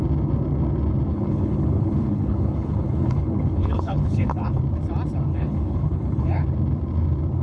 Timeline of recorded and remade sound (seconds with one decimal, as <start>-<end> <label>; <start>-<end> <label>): 0.0-1.1 recorded; 1.1-4.6 remade; 4.6-5.3 recorded; 5.3-6.4 remade; 6.4-7.4 recorded